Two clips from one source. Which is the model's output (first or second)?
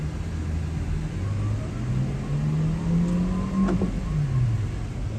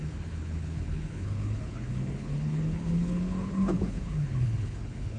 second